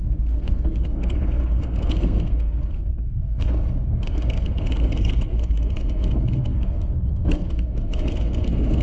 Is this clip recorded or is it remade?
remade